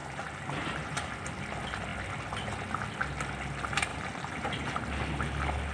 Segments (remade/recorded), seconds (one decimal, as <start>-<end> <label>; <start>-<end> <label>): 0.0-1.1 remade; 1.1-3.9 recorded; 3.9-4.8 remade; 4.8-5.7 recorded